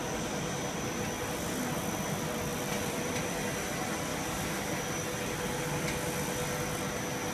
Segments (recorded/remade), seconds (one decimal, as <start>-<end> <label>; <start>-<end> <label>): 0.0-2.5 recorded; 2.5-3.3 remade; 3.3-4.1 recorded; 4.1-4.8 remade; 4.8-7.3 recorded